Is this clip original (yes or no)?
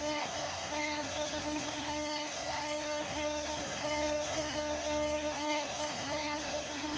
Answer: no